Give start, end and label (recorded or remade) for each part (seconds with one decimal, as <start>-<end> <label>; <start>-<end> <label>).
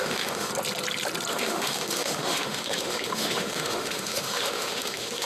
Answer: 0.0-0.5 remade; 0.5-1.3 recorded; 1.3-5.3 remade